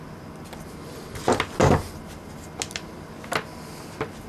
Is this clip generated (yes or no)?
no